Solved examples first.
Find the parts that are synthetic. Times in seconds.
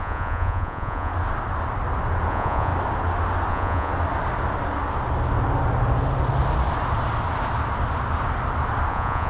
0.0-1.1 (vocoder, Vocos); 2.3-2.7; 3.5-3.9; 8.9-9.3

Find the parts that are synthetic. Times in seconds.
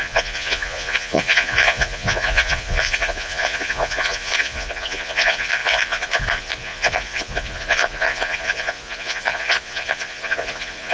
0.0-10.9 (vocoder, Vocos)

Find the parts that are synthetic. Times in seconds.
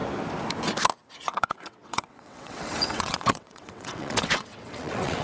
1.3-5.2 (vocoder, WaveNeXt)